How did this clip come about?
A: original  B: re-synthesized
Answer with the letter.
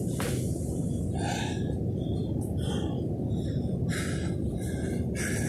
A